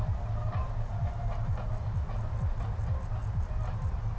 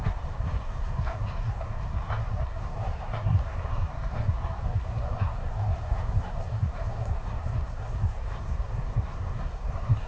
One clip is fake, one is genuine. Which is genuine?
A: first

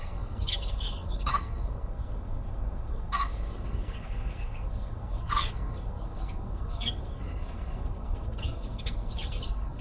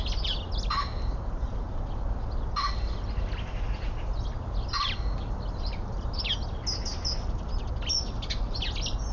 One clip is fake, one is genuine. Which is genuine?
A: second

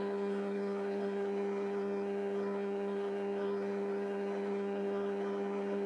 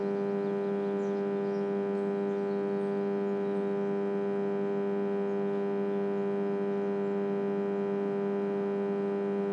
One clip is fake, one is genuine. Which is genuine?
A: second